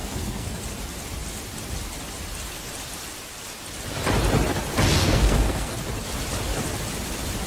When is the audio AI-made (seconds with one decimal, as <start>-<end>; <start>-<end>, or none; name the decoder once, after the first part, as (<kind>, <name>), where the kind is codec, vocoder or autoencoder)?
0.0-0.6 (codec, SNAC); 5.0-5.7